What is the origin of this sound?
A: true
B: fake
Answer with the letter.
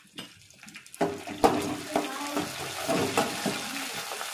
A